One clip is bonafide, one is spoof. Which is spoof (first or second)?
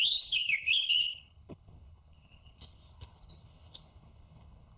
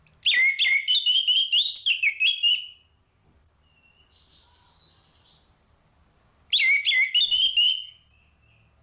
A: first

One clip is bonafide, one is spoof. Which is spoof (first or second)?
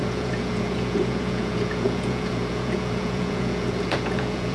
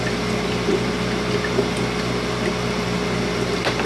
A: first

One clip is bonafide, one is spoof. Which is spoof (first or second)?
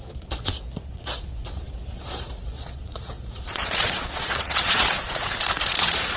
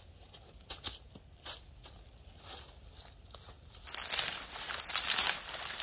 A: first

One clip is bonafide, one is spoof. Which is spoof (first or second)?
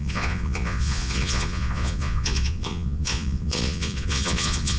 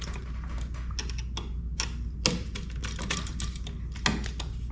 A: first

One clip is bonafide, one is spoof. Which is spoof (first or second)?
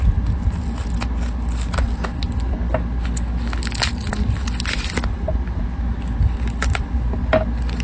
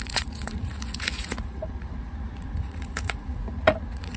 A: second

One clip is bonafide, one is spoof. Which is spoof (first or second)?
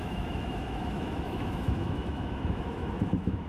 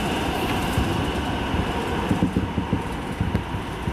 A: first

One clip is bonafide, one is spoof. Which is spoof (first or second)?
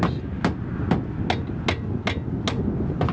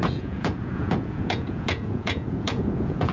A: second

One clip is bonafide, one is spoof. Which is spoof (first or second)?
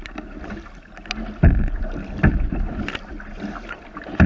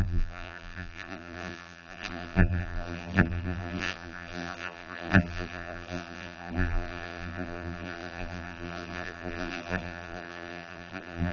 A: second